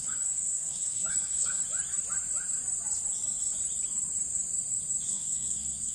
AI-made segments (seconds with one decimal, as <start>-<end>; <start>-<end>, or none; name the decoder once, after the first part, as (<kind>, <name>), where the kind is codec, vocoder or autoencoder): 0.0-1.6 (codec, SNAC); 5.1-5.9